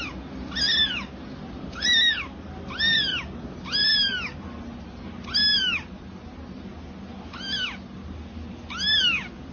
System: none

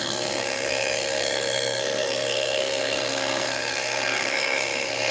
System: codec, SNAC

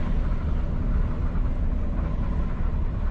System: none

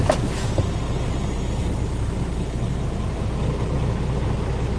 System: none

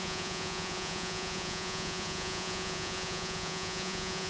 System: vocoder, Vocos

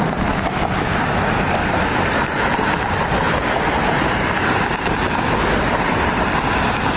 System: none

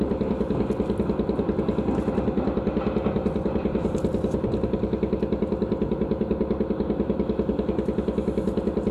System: none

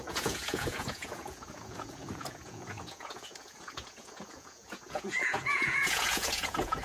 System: vocoder, Vocos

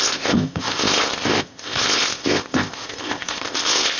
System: codec, ZipCodec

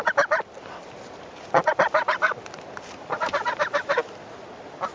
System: vocoder, BigVGAN v2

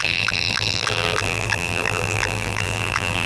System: vocoder, BigVGAN v2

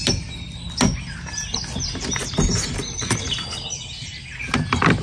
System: none